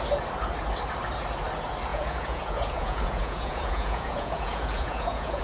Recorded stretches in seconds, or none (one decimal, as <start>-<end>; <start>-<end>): 0.0-1.9